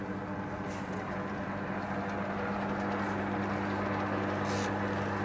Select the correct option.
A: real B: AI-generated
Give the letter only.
A